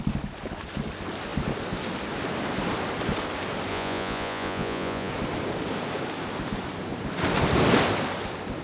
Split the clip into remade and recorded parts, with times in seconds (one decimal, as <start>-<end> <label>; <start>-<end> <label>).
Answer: 0.0-3.7 recorded; 3.7-5.1 remade; 5.1-8.6 recorded